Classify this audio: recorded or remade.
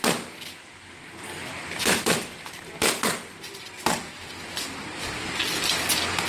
recorded